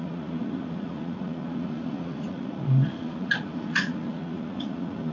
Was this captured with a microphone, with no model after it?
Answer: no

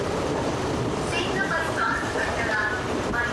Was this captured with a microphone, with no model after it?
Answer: no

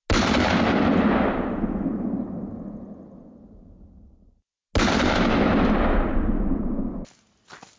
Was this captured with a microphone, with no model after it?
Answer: yes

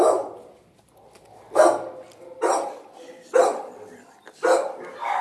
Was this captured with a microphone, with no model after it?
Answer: yes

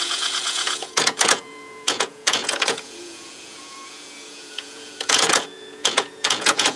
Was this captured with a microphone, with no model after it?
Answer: no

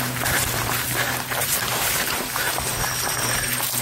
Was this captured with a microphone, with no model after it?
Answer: no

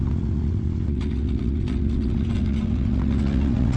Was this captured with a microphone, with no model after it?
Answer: no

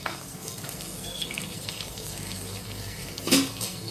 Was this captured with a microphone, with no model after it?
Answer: no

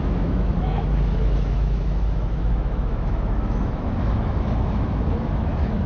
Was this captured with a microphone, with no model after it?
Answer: no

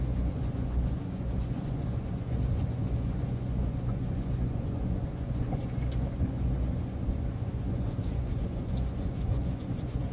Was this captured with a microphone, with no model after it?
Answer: no